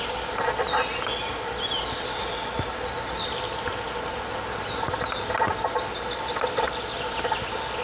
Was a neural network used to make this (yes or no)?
no